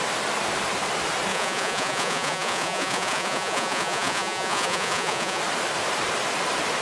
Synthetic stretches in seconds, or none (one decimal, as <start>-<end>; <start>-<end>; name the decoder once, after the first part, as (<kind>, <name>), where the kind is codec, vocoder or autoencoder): 1.3-5.4 (vocoder, Vocos)